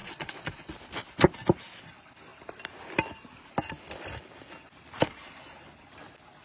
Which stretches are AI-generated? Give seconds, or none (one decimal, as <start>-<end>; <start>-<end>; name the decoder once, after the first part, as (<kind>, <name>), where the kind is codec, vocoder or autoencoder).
0.0-0.7 (vocoder, Vocos)